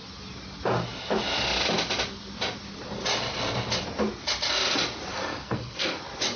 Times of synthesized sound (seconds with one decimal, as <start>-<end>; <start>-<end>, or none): 5.1-6.0